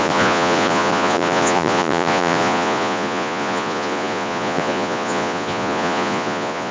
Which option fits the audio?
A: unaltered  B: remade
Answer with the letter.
B